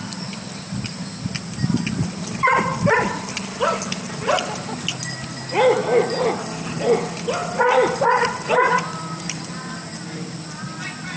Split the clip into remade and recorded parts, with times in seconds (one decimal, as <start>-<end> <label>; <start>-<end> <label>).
0.0-11.2 recorded

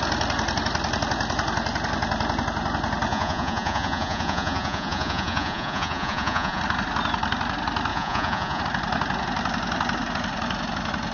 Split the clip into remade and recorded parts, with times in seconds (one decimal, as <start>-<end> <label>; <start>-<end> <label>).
0.0-3.1 recorded; 3.1-6.6 remade; 6.6-7.9 recorded; 7.9-8.6 remade; 8.6-11.1 recorded

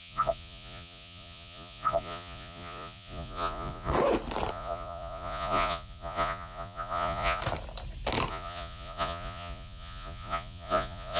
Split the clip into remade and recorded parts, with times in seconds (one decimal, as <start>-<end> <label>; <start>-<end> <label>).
0.0-3.9 remade; 3.9-4.5 recorded; 4.5-7.4 remade; 7.4-8.3 recorded; 8.3-11.2 remade

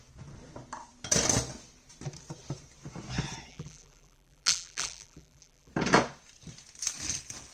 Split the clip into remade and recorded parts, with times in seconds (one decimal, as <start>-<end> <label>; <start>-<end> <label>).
0.0-3.5 recorded; 3.5-5.7 remade; 5.7-7.5 recorded

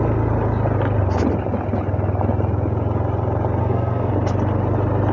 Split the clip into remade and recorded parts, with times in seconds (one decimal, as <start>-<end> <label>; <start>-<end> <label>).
0.0-3.6 recorded; 3.6-4.1 remade; 4.1-5.1 recorded

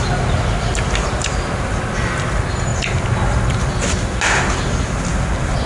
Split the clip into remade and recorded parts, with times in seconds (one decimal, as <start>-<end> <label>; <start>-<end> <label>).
0.0-5.7 recorded

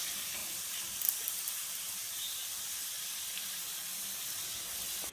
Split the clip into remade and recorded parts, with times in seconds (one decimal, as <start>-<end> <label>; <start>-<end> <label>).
0.0-5.1 recorded

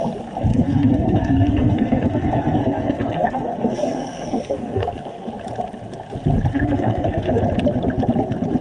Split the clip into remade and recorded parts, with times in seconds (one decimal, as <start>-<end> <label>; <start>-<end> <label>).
0.0-0.5 recorded; 0.5-5.3 remade; 5.3-6.5 recorded; 6.5-7.4 remade; 7.4-8.6 recorded